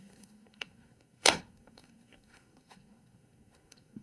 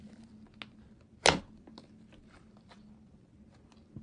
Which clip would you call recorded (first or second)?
second